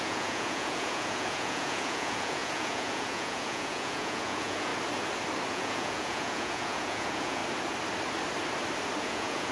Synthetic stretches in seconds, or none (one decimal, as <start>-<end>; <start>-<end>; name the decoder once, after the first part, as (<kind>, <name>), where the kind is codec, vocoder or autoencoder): 0.0-4.7 (vocoder, Vocos); 5.5-7.4; 9.0-9.5